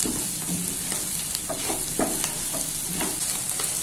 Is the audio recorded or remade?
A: recorded